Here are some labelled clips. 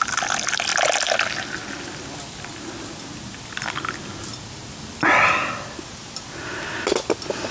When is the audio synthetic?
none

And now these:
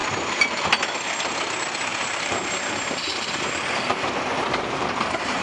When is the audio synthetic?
0.0-0.6 (vocoder, BigVGAN v2); 1.9-5.4